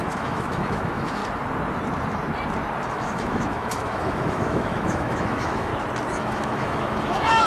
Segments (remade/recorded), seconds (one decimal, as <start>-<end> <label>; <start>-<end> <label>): 0.0-1.2 remade; 1.2-2.9 recorded; 2.9-5.7 remade; 5.7-6.2 recorded; 6.2-7.5 remade